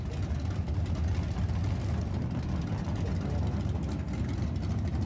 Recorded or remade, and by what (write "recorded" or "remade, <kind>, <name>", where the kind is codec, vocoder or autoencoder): recorded